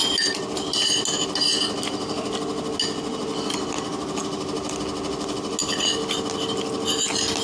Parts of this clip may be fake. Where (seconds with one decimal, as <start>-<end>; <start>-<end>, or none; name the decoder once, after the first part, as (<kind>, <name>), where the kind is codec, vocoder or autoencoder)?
none